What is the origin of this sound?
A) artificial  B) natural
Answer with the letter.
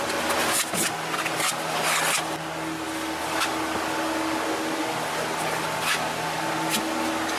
B